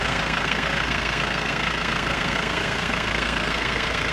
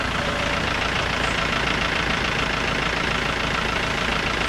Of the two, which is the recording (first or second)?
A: second